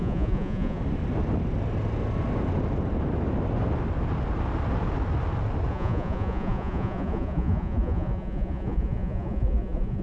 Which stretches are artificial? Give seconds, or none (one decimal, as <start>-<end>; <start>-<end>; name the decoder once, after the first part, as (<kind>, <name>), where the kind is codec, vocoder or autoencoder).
0.0-0.8 (vocoder, Vocos); 5.7-10.0